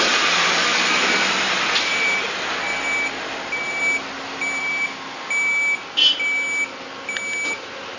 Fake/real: real